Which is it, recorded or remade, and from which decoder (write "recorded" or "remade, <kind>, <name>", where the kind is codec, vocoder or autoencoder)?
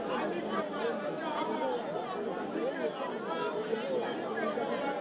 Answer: recorded